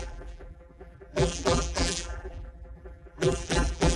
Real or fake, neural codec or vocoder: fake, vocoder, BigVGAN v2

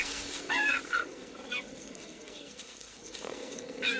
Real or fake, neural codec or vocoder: fake, codec, SNAC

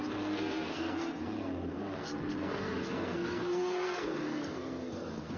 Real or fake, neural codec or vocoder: fake, codec, SNAC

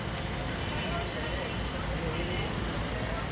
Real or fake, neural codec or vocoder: real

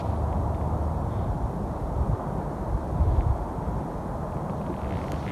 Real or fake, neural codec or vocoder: real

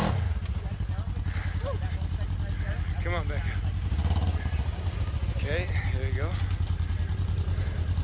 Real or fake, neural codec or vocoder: real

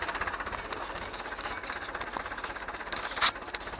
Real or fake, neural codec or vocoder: real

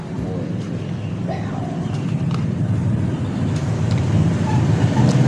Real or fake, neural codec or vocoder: fake, vocoder, BigVGAN v2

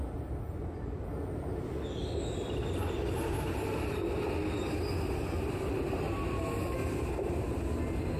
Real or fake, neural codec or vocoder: real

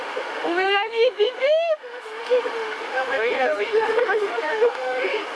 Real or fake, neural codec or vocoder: fake, autoencoder, DAC-VAE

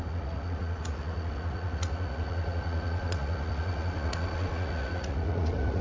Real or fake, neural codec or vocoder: fake, vocoder, Vocos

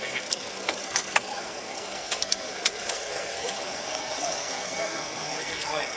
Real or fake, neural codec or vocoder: fake, codec, SNAC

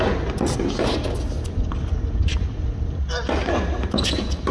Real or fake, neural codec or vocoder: real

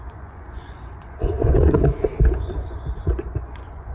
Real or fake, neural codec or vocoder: fake, vocoder, Vocos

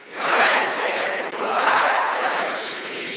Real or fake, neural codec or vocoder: fake, codec, HILCodec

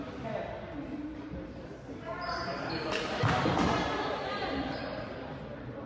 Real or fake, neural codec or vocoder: fake, vocoder, BigVGAN v2